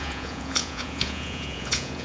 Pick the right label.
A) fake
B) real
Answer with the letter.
A